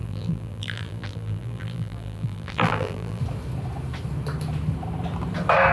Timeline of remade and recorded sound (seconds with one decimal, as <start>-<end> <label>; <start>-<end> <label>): 0.0-3.2 remade; 3.2-5.7 recorded